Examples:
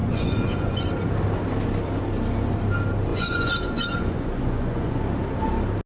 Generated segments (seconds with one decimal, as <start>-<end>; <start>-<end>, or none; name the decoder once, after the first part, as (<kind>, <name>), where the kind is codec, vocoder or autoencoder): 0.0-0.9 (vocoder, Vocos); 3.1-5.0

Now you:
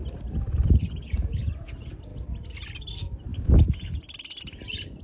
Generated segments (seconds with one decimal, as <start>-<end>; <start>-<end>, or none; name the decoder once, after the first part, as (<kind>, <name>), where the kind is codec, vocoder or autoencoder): none

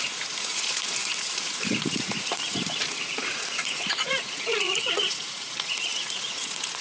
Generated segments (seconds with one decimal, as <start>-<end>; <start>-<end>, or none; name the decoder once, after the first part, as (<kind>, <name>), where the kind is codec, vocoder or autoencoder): 0.0-6.8 (vocoder, Vocos)

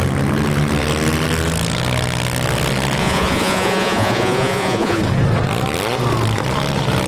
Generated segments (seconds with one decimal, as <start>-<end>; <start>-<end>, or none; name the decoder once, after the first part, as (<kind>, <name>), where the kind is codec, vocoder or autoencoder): 3.0-5.0 (vocoder, Vocos)